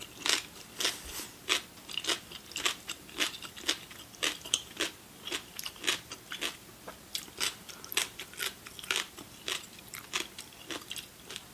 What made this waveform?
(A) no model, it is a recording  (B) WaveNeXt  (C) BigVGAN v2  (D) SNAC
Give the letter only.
A